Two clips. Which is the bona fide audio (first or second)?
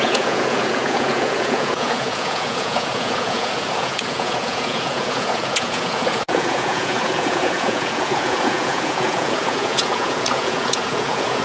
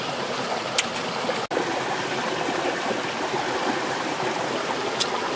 second